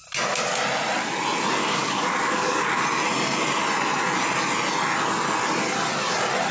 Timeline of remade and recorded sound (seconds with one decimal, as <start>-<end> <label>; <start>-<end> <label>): 0.0-1.6 recorded; 1.6-2.8 remade; 2.8-6.5 recorded